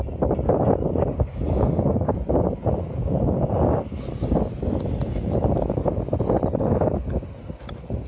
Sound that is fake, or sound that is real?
real